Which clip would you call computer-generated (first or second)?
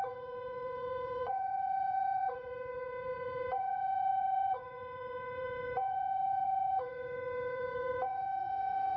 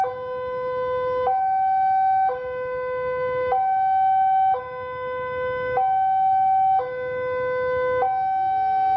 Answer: first